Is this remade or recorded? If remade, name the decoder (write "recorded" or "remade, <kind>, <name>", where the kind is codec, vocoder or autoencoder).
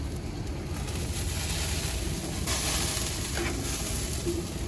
recorded